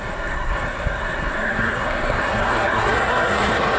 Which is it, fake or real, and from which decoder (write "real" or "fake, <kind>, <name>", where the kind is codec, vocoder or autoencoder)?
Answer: fake, codec, SNAC